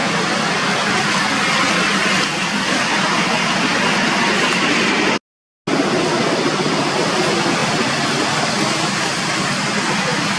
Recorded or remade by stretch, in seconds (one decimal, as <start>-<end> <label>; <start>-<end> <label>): 0.0-10.4 recorded